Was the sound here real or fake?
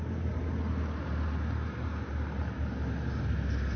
real